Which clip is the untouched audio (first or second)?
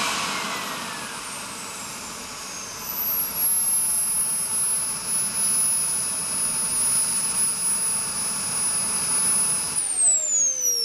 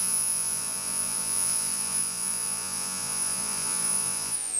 first